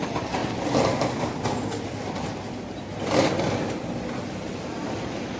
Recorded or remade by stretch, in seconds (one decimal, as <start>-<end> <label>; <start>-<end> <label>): 0.0-5.4 recorded